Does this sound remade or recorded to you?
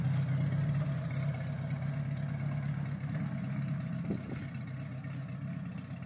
recorded